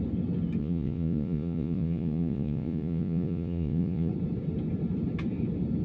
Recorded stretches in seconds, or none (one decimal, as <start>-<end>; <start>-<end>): 0.0-0.6; 4.1-5.8